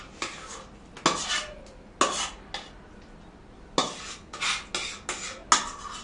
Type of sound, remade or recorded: recorded